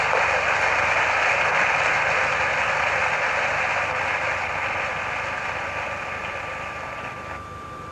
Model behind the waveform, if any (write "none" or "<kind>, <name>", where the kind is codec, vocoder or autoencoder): none